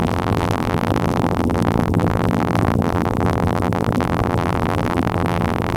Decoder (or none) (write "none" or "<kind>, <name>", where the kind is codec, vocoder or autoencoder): vocoder, BigVGAN v2